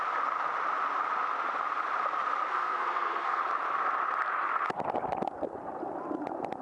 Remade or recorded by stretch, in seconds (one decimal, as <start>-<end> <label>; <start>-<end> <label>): 0.0-2.5 recorded; 2.5-3.4 remade; 3.4-6.6 recorded